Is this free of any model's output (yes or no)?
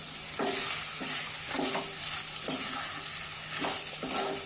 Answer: yes